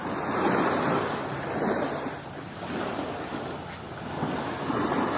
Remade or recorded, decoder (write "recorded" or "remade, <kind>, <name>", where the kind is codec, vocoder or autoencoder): recorded